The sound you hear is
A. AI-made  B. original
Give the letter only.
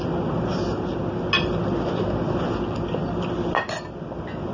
B